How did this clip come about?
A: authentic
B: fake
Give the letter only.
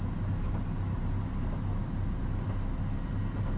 A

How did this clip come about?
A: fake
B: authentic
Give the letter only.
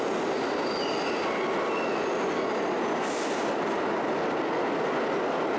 B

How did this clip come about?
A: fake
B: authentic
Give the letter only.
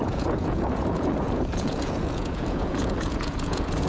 A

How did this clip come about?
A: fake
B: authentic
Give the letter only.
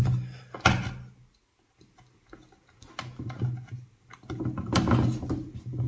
B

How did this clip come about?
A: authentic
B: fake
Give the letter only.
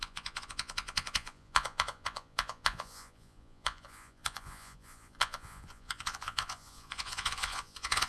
B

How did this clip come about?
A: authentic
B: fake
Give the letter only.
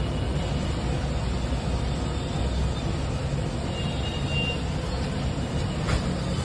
A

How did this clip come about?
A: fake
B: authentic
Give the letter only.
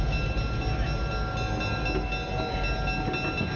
B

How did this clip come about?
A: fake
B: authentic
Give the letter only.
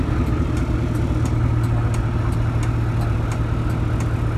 B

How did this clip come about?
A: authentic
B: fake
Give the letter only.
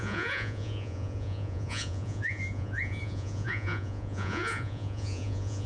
B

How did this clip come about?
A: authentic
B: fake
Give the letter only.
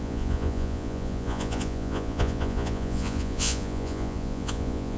B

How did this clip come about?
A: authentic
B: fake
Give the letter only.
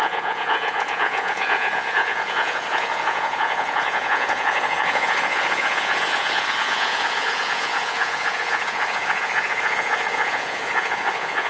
B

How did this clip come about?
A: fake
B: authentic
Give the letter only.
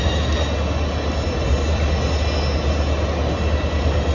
B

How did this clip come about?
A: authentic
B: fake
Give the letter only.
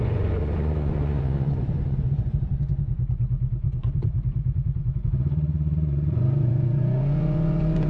B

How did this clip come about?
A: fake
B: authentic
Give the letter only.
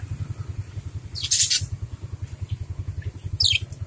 B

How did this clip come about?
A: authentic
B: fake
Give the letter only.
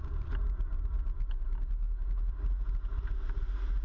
A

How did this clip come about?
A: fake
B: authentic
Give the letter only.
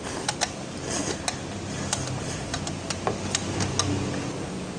B